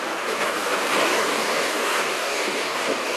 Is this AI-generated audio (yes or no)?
yes